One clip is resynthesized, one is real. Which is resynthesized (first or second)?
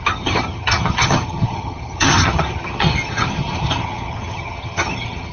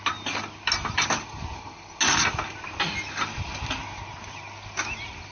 first